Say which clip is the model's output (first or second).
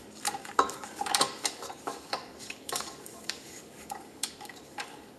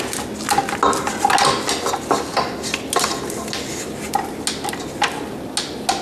first